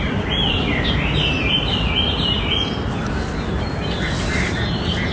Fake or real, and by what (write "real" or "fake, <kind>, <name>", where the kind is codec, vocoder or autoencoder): real